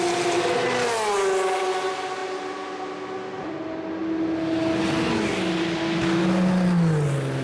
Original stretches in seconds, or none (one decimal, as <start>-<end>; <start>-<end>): 0.0-7.4